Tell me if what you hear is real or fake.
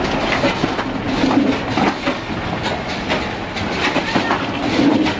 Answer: real